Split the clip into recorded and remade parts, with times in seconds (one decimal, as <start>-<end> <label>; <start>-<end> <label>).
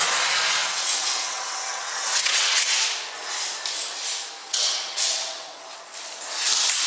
0.0-0.6 recorded; 0.6-2.8 remade; 2.8-4.4 recorded; 4.4-5.8 remade; 5.8-6.9 recorded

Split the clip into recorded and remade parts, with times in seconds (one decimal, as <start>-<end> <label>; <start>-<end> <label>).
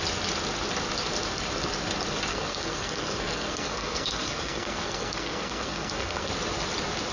0.0-2.3 recorded; 2.3-6.3 remade; 6.3-7.1 recorded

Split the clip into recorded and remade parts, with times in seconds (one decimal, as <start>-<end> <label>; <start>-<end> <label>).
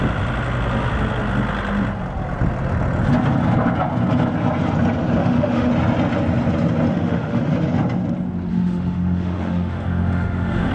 0.0-5.2 recorded; 5.2-5.7 remade; 5.7-6.9 recorded; 6.9-7.5 remade; 7.5-8.5 recorded; 8.5-10.7 remade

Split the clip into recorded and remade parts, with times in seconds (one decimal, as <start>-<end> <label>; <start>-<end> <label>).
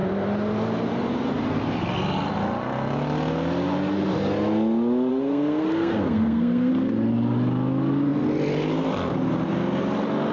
0.0-5.1 recorded; 5.1-6.7 remade; 6.7-10.3 recorded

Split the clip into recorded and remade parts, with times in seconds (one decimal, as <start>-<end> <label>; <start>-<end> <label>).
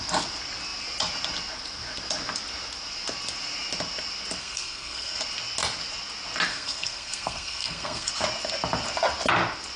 0.0-4.4 recorded; 4.4-5.2 remade; 5.2-6.5 recorded; 6.5-8.1 remade; 8.1-9.8 recorded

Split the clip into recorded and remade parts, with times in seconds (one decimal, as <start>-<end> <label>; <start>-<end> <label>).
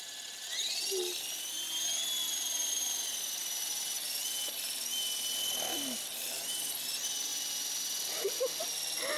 0.0-9.2 recorded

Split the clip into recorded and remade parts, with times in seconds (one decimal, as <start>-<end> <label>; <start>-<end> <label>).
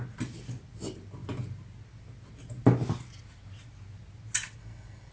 0.0-4.6 recorded; 4.6-5.1 remade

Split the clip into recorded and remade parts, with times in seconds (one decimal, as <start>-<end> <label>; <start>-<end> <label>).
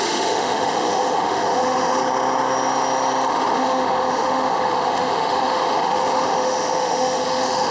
0.0-2.0 remade; 2.0-3.3 recorded; 3.3-7.7 remade